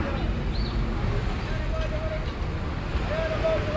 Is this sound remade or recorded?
recorded